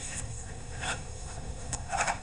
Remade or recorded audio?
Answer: remade